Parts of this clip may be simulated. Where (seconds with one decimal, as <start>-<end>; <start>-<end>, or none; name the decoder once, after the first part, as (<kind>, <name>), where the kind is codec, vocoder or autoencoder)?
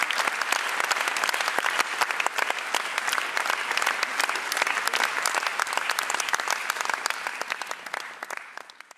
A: none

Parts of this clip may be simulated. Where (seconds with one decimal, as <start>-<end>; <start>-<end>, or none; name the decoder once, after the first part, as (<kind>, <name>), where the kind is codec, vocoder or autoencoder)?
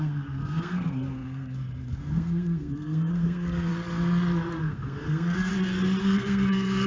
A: 0.0-3.7 (codec, SNAC); 4.6-5.5; 6.0-6.9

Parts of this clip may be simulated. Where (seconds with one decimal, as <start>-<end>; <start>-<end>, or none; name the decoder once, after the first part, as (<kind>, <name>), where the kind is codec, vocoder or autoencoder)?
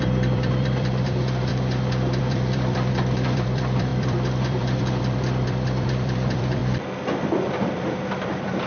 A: 0.0-1.5 (vocoder, BigVGAN v2); 2.2-6.6; 7.6-8.7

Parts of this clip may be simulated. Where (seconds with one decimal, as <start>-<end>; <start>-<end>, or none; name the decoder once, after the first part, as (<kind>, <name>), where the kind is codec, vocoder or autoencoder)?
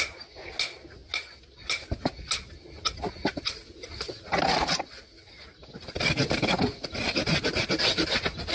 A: 5.6-8.5 (vocoder, BigVGAN v2)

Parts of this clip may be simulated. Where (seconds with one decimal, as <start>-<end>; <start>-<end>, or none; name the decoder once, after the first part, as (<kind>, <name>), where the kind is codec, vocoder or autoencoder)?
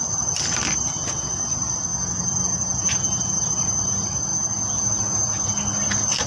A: 0.0-1.9 (vocoder, BigVGAN v2); 3.5-4.3; 4.9-6.3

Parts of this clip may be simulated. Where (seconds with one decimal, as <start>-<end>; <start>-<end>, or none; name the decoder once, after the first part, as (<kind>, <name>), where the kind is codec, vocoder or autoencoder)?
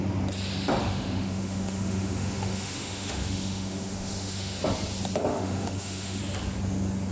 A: 0.8-4.6 (autoencoder, DAC-VAE); 5.3-6.2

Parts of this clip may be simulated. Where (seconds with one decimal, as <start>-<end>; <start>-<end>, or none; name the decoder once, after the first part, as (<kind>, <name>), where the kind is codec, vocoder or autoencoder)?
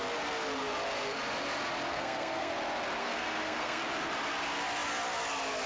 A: 1.9-2.5 (codec, SNAC); 3.0-3.8